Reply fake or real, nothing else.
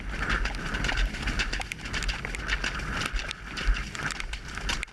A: real